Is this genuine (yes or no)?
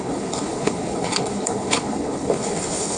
no